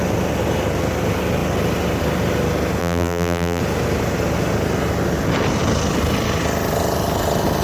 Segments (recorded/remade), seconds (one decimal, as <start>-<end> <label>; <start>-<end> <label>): 0.0-2.8 recorded; 2.8-3.6 remade; 3.6-7.6 recorded